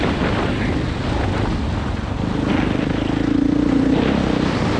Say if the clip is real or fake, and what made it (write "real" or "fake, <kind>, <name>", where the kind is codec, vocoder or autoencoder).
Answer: real